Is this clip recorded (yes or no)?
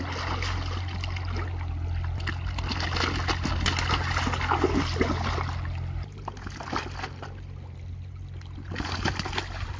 yes